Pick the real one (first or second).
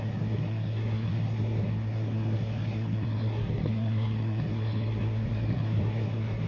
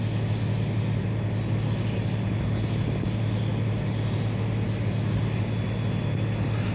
second